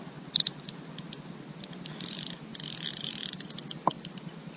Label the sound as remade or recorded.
recorded